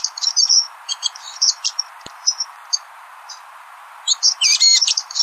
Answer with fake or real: fake